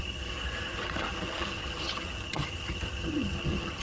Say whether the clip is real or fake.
fake